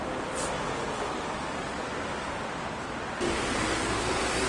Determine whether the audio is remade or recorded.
recorded